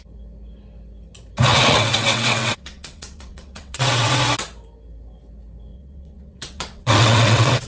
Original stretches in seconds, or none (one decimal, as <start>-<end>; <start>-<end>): 0.0-1.5; 4.2-5.7